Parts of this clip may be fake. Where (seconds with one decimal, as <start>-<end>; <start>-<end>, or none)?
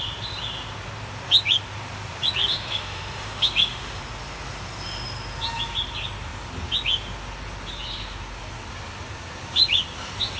2.5-4.0